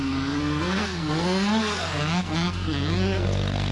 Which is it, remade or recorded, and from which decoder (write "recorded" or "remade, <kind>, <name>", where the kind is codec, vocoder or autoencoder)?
remade, codec, SNAC